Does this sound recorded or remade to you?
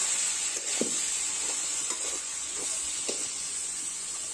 remade